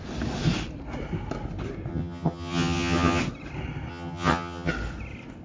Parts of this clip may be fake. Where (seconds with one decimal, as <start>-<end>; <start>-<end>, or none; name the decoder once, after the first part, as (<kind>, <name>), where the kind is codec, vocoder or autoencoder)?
1.9-3.2 (vocoder, HiFi-GAN); 3.9-4.7